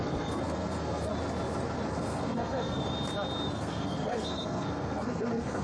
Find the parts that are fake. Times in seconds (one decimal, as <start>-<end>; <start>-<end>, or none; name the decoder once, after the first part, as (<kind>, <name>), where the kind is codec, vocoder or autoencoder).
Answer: 0.0-1.1 (codec, SNAC); 1.9-2.8; 3.5-5.6